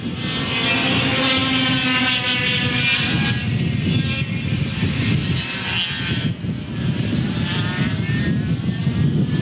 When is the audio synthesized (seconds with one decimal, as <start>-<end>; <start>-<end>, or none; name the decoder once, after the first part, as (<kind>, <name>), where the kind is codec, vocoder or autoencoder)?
none